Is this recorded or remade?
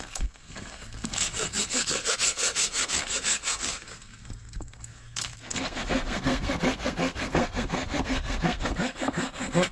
remade